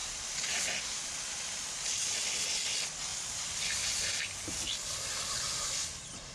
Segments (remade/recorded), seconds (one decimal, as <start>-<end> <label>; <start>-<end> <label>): 0.0-6.3 recorded